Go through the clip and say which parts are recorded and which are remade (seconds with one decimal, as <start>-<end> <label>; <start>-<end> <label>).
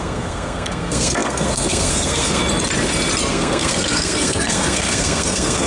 0.0-2.4 remade; 2.4-3.3 recorded; 3.3-5.7 remade